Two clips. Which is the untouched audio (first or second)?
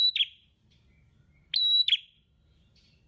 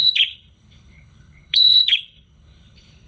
first